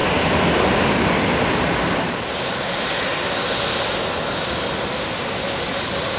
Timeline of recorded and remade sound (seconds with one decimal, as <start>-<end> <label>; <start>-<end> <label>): 0.0-3.7 recorded; 3.7-6.2 remade